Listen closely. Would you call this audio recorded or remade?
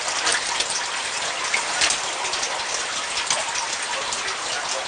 recorded